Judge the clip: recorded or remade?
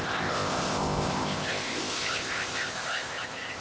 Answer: remade